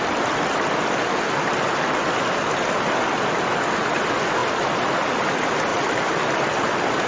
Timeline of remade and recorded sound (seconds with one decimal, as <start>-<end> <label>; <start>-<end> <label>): 0.0-5.7 recorded; 5.7-7.1 remade